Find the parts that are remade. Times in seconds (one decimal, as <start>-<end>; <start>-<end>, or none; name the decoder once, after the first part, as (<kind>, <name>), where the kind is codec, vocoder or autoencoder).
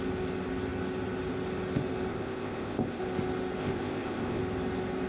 2.1-3.0 (codec, ZipCodec); 3.6-4.4